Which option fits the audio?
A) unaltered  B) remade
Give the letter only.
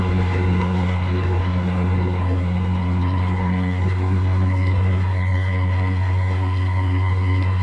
B